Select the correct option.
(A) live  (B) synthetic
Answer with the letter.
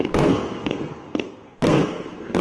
B